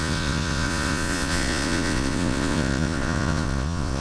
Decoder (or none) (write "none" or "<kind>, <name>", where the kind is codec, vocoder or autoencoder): vocoder, Vocos